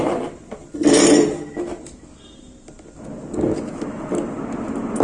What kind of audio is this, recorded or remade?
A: recorded